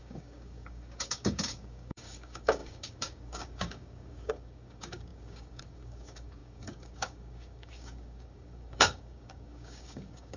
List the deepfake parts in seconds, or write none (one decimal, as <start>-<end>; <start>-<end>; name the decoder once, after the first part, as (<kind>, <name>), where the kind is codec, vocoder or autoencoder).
0.0-10.4 (codec, DAC)